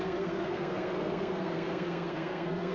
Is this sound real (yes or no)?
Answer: no